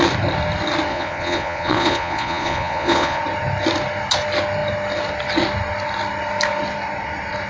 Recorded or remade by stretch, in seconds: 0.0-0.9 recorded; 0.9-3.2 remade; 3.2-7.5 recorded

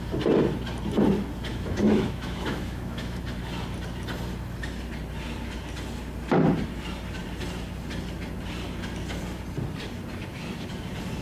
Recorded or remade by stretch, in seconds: 0.0-1.5 recorded; 1.5-3.2 remade; 3.2-11.2 recorded

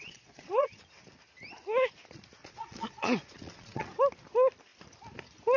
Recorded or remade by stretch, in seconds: 0.0-0.8 remade; 0.8-2.4 recorded; 2.4-3.9 remade; 3.9-5.6 recorded

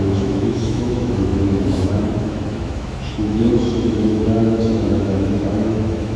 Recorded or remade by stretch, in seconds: 0.0-6.2 remade

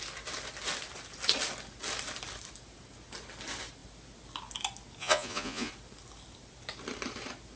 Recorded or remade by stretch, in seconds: 0.0-5.0 recorded; 5.0-5.7 remade; 5.7-7.6 recorded

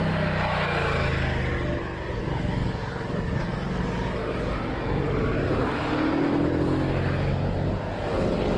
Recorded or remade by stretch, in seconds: 0.0-2.2 recorded; 2.2-3.4 remade; 3.4-4.2 recorded; 4.2-5.0 remade; 5.0-8.6 recorded

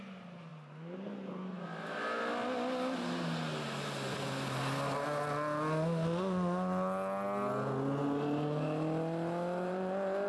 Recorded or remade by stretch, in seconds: 0.0-10.3 recorded